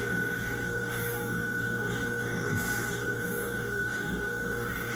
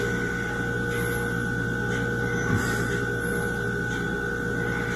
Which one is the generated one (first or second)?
first